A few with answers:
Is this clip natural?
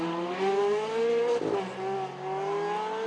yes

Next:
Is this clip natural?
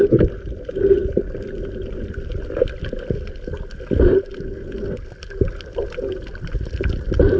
yes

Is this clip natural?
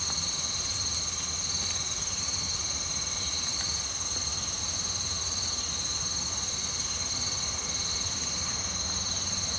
yes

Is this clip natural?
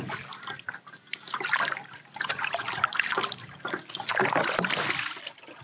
yes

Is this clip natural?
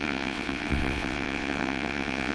no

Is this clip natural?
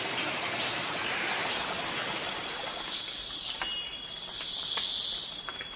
yes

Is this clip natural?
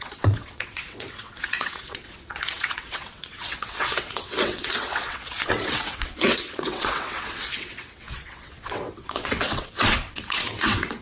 no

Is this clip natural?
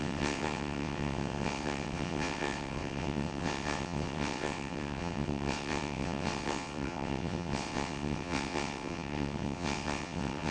no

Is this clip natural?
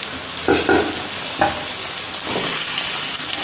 yes